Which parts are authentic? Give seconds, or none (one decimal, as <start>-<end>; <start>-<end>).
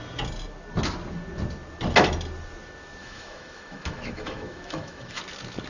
0.0-3.0; 5.2-5.7